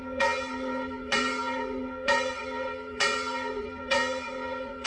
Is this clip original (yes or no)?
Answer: no